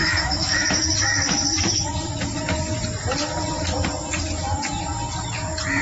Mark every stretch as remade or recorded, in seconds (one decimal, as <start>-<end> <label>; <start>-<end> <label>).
0.0-0.6 remade; 0.6-5.8 recorded